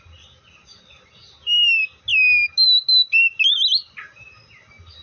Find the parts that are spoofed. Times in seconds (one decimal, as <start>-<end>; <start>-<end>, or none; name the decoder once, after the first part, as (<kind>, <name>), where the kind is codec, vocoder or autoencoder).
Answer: none